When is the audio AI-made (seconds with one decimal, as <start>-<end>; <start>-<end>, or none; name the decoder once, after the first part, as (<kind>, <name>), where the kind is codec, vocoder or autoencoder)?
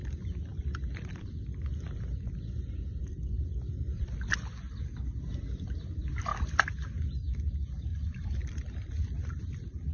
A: 0.5-4.2 (vocoder, BigVGAN v2); 6.3-6.9; 7.9-9.4